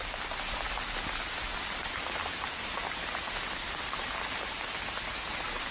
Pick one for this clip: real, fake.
real